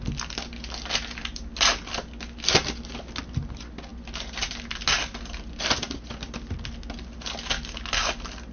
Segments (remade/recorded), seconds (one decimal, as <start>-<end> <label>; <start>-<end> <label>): 0.0-8.5 recorded